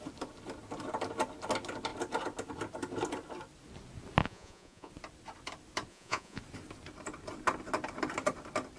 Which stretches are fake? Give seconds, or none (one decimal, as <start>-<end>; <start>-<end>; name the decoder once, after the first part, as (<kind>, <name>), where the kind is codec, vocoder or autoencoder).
4.2-4.9 (vocoder, Vocos); 5.9-6.4